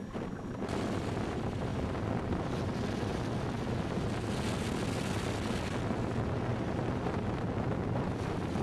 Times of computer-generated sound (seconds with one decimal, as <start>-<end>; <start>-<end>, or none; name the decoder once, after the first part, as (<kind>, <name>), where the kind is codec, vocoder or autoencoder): 0.0-3.1 (vocoder, BigVGAN v2); 6.5-8.6